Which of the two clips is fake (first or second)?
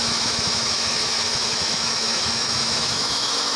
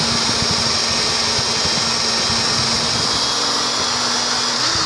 first